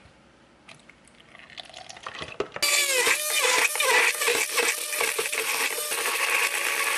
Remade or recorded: recorded